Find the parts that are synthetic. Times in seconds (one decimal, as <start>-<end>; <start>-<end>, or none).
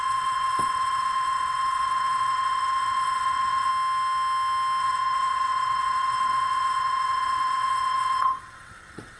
0.0-3.7; 4.8-9.2